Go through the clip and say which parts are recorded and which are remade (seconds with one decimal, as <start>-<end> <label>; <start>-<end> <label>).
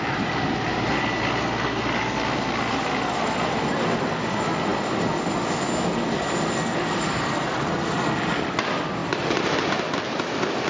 0.0-10.7 recorded